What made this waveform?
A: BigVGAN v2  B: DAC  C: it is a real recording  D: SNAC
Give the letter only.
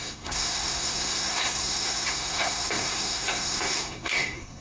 D